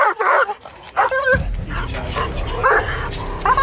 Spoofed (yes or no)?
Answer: no